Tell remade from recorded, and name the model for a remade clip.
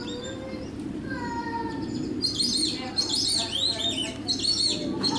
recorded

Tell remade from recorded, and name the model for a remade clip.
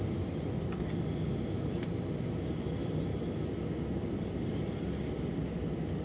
recorded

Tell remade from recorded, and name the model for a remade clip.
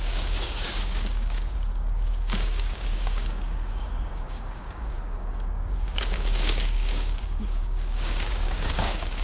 remade, codec, DAC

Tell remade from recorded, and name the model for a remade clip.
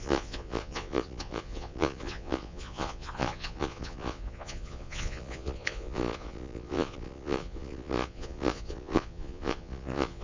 remade, vocoder, Vocos